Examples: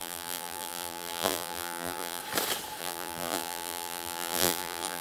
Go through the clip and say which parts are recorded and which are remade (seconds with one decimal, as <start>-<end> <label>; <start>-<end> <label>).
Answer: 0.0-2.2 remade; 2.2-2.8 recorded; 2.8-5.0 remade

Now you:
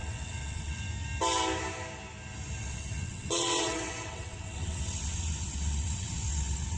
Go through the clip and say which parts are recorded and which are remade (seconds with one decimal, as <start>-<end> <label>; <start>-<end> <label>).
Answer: 0.0-0.8 remade; 0.8-2.6 recorded; 2.6-6.8 remade

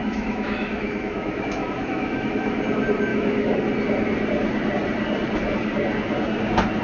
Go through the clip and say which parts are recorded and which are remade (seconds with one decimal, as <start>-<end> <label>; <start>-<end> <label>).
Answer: 0.0-2.6 remade; 2.6-3.1 recorded; 3.1-3.6 remade; 3.6-6.8 recorded

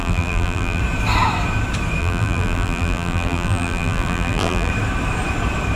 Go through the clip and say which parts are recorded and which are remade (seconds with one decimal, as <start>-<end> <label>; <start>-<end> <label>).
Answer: 0.0-0.8 remade; 0.8-2.0 recorded; 2.0-4.7 remade; 4.7-5.8 recorded

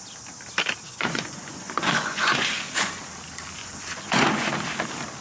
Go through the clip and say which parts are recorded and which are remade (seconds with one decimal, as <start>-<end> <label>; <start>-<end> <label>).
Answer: 0.0-0.9 recorded; 0.9-3.0 remade; 3.0-3.6 recorded; 3.6-4.5 remade; 4.5-5.2 recorded

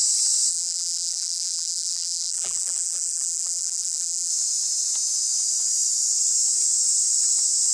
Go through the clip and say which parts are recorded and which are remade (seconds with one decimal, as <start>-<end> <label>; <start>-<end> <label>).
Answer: 0.0-0.5 recorded; 0.5-4.3 remade; 4.3-7.7 recorded

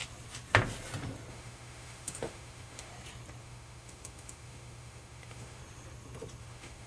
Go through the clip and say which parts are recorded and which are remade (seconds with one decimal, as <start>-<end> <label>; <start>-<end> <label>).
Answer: 0.0-1.3 recorded; 1.3-2.9 remade; 2.9-3.4 recorded; 3.4-5.6 remade; 5.6-6.4 recorded; 6.4-6.9 remade